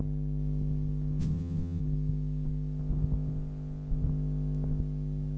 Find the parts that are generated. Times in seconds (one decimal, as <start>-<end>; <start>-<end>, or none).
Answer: 1.2-1.8